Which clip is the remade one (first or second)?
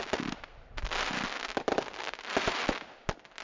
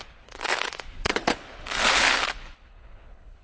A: second